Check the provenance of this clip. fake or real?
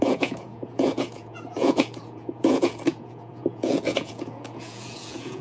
fake